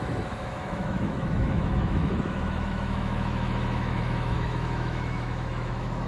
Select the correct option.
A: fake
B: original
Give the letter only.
A